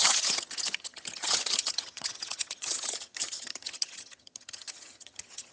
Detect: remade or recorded remade